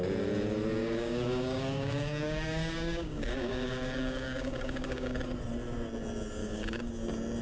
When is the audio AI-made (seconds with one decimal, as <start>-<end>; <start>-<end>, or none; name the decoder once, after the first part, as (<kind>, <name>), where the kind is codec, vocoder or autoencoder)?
0.8-5.2 (codec, DAC); 6.4-6.9